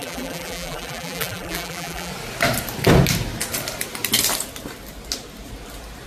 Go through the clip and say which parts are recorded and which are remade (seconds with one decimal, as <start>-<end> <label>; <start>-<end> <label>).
0.0-2.1 remade; 2.1-6.1 recorded